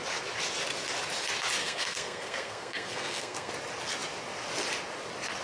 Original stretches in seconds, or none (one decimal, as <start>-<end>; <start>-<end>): 0.0-1.6; 3.5-5.4

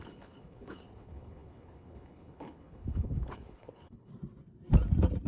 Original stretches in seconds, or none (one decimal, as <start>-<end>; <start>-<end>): 4.1-5.3

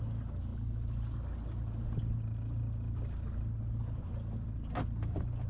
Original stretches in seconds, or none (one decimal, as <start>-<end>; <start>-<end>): 0.0-5.5

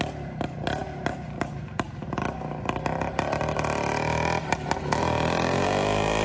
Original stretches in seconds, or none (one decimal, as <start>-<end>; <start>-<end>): 0.0-6.2

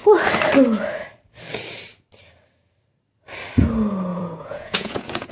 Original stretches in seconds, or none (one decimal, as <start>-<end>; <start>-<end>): 0.0-4.1

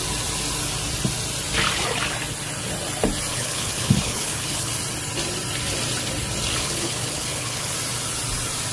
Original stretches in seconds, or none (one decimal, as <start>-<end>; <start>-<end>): 0.0-3.3; 4.7-6.6; 7.7-8.7

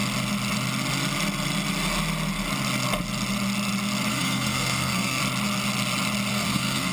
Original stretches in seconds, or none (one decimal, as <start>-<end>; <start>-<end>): 0.0-4.1; 5.2-6.3

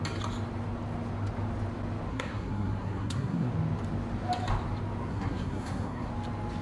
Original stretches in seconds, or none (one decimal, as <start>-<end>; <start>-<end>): 0.0-2.1; 3.5-5.1; 6.1-6.6